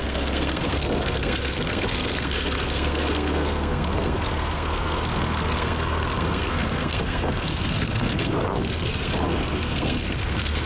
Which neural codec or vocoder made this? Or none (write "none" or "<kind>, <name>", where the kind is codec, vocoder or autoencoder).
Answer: codec, SNAC